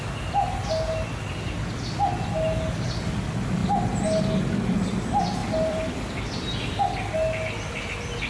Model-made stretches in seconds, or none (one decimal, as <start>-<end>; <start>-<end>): 5.4-6.8